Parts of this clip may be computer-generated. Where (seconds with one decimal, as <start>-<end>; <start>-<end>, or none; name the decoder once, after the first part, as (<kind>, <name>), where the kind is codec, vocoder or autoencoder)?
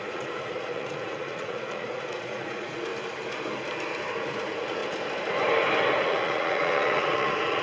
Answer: 0.0-2.9 (vocoder, Vocos); 4.1-4.8; 6.0-7.6